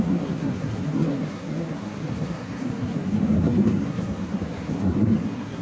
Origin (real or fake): fake